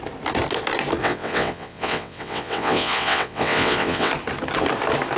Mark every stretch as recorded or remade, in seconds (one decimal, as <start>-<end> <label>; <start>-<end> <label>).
0.0-1.0 recorded; 1.0-4.1 remade; 4.1-5.2 recorded